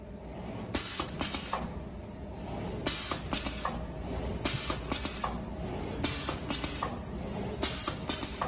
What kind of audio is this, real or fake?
real